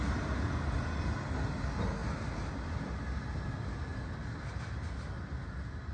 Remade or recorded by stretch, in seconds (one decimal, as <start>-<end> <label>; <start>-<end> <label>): 0.0-5.9 recorded